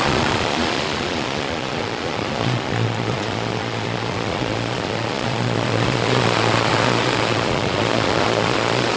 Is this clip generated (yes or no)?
yes